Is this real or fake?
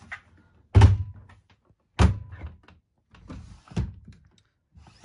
real